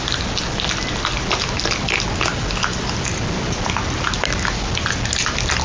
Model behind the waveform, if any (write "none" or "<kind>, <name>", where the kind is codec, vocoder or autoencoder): none